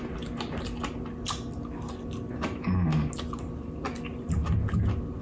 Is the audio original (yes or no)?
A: yes